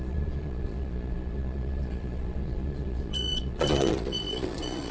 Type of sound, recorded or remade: remade